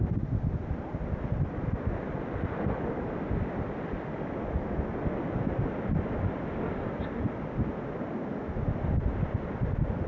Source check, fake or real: real